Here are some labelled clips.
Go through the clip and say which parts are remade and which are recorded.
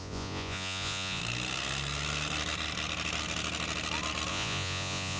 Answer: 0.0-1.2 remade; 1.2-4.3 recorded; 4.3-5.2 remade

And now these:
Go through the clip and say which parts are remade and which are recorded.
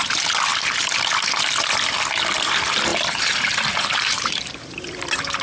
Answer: 0.0-2.9 recorded; 2.9-4.4 remade; 4.4-5.4 recorded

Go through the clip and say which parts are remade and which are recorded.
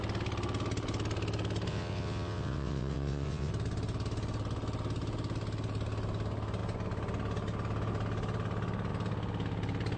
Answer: 0.0-1.7 recorded; 1.7-3.5 remade; 3.5-10.0 recorded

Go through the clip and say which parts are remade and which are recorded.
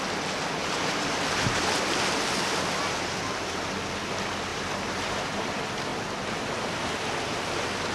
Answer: 0.0-0.6 recorded; 0.6-1.6 remade; 1.6-4.5 recorded; 4.5-5.2 remade; 5.2-7.9 recorded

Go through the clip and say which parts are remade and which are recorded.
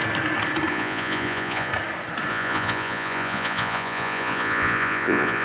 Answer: 0.0-0.7 recorded; 0.7-1.7 remade; 1.7-2.3 recorded; 2.3-5.4 remade